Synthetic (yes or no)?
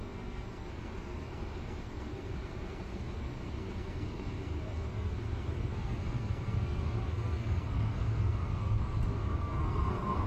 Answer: yes